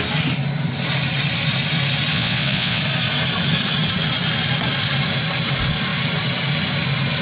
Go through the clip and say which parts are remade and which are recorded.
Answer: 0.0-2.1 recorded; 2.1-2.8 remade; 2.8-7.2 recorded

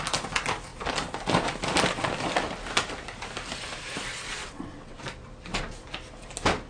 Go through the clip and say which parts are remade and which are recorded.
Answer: 0.0-4.4 recorded; 4.4-5.0 remade; 5.0-6.7 recorded

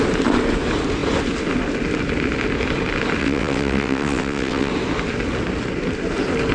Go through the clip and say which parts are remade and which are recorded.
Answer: 0.0-3.2 recorded; 3.2-4.7 remade; 4.7-6.5 recorded

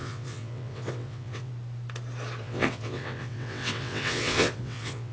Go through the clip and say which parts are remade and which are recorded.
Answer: 0.0-1.5 remade; 1.5-2.4 recorded; 2.4-5.1 remade

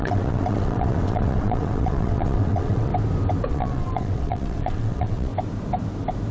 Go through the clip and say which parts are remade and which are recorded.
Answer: 0.0-2.9 remade; 2.9-3.5 recorded; 3.5-5.3 remade; 5.3-6.3 recorded

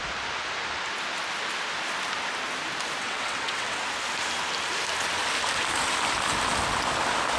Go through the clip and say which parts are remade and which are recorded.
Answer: 0.0-3.0 recorded; 3.0-3.8 remade; 3.8-7.4 recorded